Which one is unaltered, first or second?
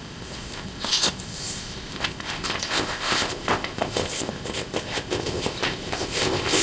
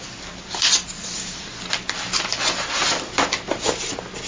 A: second